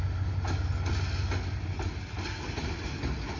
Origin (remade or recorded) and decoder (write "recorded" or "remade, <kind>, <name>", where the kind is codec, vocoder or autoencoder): recorded